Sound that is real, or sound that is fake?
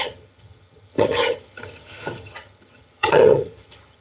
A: fake